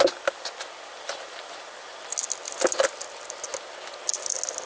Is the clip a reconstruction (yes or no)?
no